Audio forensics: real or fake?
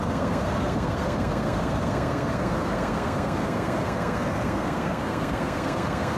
fake